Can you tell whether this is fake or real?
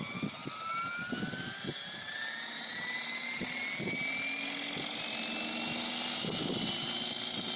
real